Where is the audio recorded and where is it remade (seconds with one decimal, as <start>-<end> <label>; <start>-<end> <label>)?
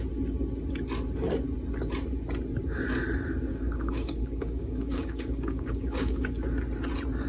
0.0-3.5 recorded; 3.5-6.3 remade; 6.3-7.3 recorded